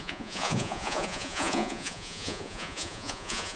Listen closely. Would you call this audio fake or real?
fake